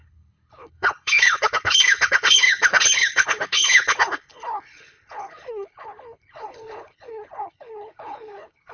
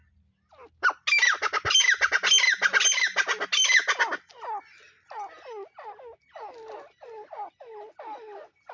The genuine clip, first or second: second